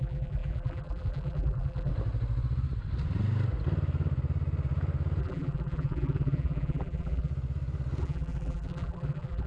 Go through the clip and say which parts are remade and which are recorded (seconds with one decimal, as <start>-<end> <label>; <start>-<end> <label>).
0.0-1.9 remade; 1.9-5.2 recorded; 5.2-7.3 remade; 7.3-8.0 recorded; 8.0-9.5 remade